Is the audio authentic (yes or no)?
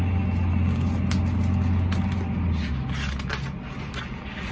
yes